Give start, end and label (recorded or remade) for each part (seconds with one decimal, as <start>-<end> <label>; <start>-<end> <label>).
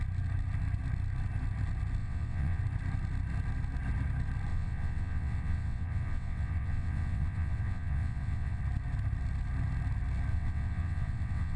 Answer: 0.0-2.0 recorded; 2.0-2.6 remade; 2.6-4.5 recorded; 4.5-8.6 remade; 8.6-10.3 recorded; 10.3-11.6 remade